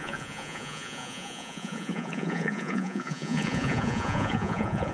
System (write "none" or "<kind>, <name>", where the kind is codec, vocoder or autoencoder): vocoder, Vocos